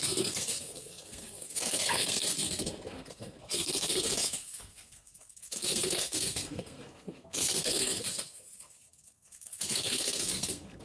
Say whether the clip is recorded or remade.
remade